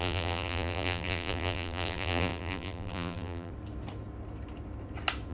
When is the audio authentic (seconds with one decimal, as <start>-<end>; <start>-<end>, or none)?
3.5-5.3